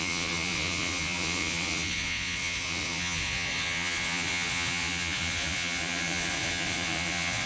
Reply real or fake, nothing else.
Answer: fake